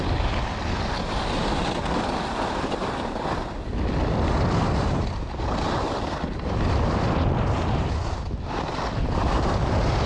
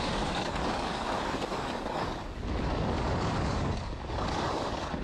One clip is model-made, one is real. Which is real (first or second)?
first